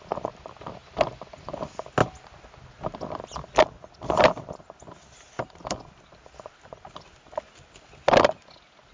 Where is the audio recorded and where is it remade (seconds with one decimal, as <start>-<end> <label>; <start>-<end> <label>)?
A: 0.0-8.9 recorded